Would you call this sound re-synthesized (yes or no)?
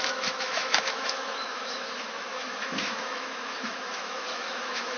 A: yes